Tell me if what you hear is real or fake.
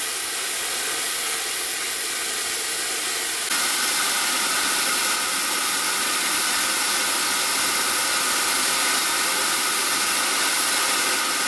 real